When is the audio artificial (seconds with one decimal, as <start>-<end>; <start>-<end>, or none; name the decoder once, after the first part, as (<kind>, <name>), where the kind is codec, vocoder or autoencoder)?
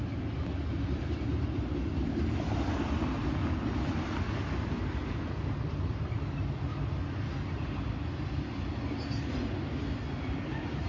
5.0-5.5 (vocoder, Vocos)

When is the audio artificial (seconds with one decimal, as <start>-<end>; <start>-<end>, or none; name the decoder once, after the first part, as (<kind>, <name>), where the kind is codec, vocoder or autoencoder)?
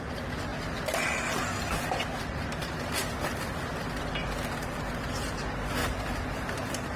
0.5-1.0 (vocoder, BigVGAN v2); 5.8-7.0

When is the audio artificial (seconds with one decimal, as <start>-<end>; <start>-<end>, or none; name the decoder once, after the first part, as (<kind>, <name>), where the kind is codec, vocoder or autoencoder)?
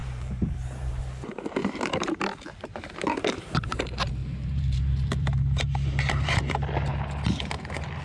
0.0-0.9 (vocoder, BigVGAN v2); 1.6-3.7; 4.2-6.4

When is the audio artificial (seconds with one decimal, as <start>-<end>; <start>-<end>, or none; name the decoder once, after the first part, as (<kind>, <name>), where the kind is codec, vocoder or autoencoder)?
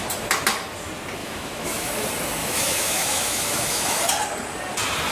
1.2-1.9 (autoencoder, DAC-VAE); 2.4-4.0